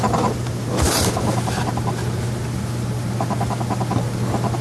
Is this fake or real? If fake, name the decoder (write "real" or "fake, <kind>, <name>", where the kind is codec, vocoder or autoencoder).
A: real